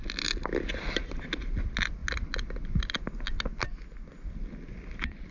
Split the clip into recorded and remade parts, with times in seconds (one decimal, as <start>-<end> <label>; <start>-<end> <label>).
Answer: 0.0-5.3 recorded